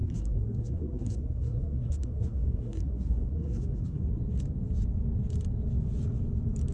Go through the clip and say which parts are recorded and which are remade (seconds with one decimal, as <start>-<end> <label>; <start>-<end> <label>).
0.0-4.0 remade; 4.0-6.7 recorded